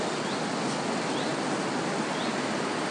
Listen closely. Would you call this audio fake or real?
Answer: real